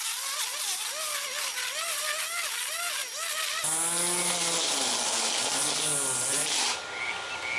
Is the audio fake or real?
real